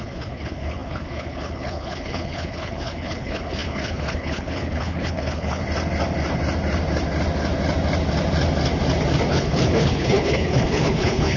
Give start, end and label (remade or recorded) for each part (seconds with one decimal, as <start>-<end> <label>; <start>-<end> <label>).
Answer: 0.0-5.6 remade; 5.6-9.3 recorded; 9.3-11.4 remade